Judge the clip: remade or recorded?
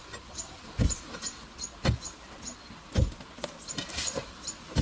recorded